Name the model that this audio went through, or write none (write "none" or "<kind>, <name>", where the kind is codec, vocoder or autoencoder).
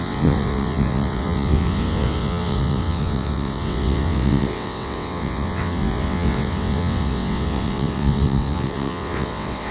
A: vocoder, WaveNeXt